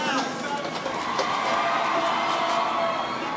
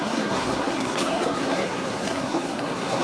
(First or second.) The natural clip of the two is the first